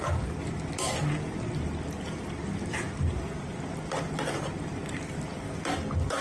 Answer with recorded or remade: recorded